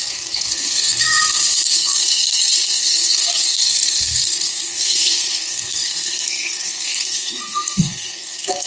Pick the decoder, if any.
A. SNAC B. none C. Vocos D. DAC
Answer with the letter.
A